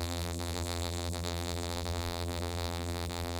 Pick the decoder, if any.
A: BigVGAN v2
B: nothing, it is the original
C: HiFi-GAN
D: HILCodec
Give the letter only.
A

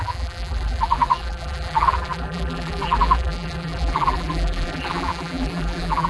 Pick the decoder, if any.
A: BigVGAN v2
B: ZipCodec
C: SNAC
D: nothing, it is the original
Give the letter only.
A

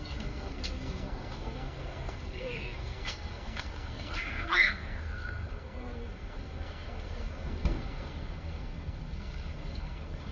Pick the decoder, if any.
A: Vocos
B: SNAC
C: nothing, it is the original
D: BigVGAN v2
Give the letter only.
B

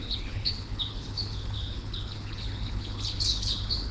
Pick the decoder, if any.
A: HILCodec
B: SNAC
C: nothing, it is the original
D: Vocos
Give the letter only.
A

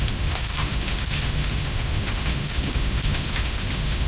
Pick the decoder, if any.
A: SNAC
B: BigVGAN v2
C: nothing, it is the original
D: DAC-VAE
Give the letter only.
D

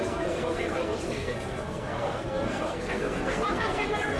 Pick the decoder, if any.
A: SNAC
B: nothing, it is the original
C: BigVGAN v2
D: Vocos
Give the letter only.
A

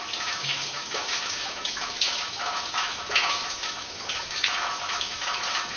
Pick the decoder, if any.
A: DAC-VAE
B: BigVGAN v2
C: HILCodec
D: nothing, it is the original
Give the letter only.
A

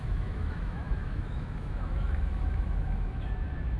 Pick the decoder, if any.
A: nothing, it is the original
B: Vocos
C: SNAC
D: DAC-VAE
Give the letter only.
D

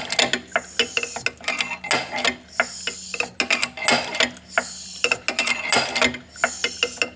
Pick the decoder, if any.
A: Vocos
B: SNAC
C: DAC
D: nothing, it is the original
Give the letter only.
D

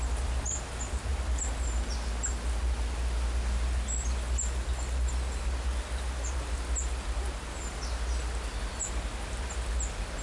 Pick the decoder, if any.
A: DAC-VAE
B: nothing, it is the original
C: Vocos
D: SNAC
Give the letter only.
B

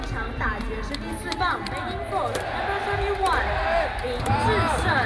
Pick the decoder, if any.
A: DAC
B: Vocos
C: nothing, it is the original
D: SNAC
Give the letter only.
C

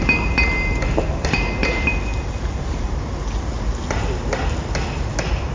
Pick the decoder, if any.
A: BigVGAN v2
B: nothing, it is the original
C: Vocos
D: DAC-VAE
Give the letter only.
B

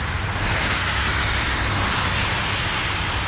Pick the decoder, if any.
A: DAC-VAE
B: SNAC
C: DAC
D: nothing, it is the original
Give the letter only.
D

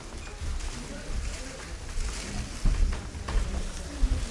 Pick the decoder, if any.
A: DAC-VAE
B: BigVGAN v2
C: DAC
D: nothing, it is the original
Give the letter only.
D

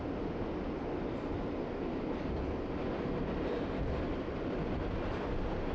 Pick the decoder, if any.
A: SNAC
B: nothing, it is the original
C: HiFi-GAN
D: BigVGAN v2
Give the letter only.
B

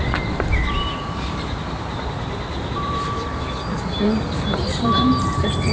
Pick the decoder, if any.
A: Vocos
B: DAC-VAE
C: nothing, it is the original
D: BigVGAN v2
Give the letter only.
D